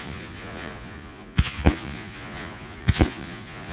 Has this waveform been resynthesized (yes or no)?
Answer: yes